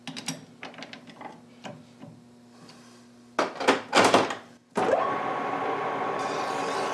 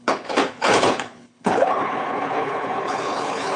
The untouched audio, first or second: first